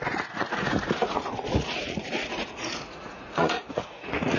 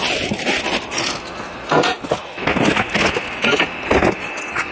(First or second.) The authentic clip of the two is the second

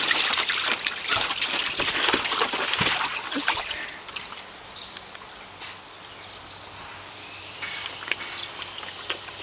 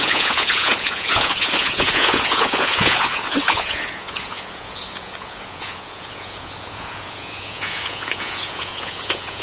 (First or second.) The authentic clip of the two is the first